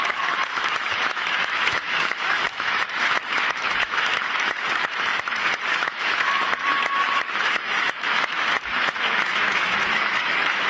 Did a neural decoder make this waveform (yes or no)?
yes